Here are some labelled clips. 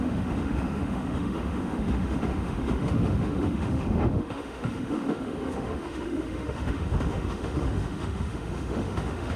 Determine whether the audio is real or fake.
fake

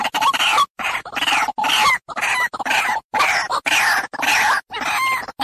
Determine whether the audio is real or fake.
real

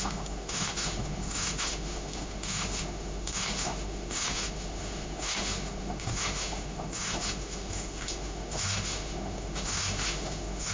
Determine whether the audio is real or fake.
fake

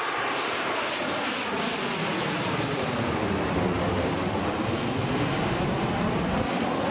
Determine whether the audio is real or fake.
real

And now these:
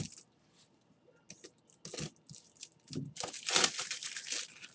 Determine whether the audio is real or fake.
real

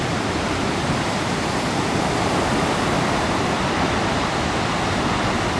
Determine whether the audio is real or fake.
real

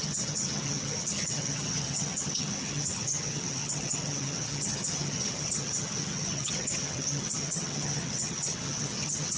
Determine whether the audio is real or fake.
fake